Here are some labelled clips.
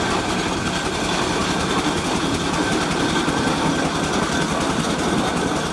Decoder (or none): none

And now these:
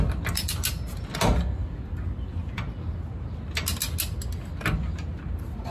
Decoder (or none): none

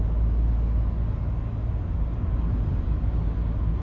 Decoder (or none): none